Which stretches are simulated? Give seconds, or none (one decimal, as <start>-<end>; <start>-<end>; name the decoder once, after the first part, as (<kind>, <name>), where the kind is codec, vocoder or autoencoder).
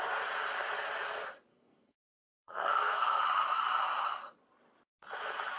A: 1.5-3.2 (codec, SNAC)